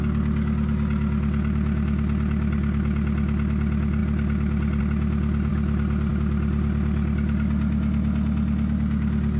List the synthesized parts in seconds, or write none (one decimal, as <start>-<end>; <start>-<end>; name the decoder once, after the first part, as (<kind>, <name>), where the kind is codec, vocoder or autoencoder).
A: none